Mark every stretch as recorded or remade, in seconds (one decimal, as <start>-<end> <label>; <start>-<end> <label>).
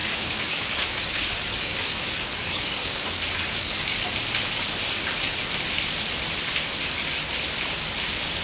0.0-4.1 remade; 4.1-8.4 recorded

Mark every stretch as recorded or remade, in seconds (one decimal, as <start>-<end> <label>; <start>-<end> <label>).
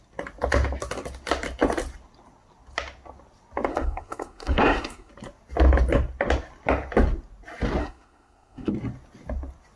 0.0-3.7 recorded; 3.7-5.1 remade; 5.1-7.8 recorded; 7.8-8.7 remade; 8.7-9.8 recorded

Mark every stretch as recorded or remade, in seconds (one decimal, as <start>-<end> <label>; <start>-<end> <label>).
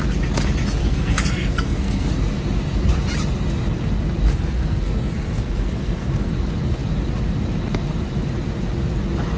0.0-0.8 recorded; 0.8-2.1 remade; 2.1-4.3 recorded; 4.3-6.3 remade; 6.3-9.4 recorded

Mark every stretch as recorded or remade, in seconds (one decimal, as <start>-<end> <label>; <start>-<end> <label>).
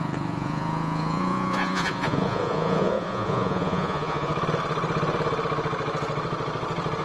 0.0-4.3 remade; 4.3-7.0 recorded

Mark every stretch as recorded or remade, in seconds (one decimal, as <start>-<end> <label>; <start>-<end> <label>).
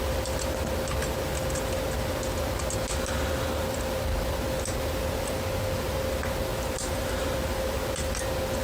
0.0-6.5 recorded; 6.5-8.1 remade; 8.1-8.6 recorded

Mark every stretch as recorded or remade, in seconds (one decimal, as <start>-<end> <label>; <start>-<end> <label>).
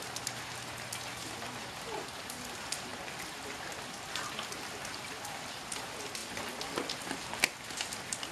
0.0-8.3 recorded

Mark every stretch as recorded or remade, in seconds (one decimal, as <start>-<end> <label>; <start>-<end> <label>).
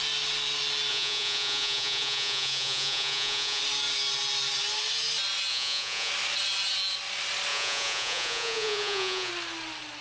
0.0-0.9 recorded; 0.9-3.6 remade; 3.6-5.5 recorded; 5.5-6.1 remade; 6.1-7.5 recorded; 7.5-9.3 remade; 9.3-10.0 recorded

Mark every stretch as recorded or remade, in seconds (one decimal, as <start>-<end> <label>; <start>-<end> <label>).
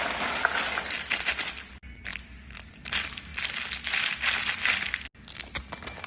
0.0-6.1 recorded